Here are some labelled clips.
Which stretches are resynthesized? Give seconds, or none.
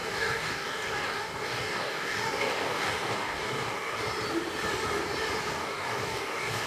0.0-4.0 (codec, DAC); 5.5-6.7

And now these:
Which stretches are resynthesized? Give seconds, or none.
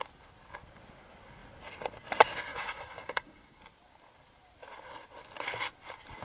2.5-3.6 (codec, DAC)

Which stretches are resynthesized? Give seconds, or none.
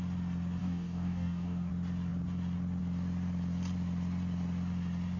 0.6-1.7 (codec, DAC)